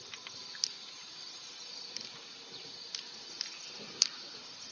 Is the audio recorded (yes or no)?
yes